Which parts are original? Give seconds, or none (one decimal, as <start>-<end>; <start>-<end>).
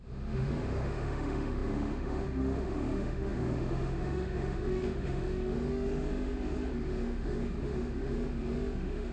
none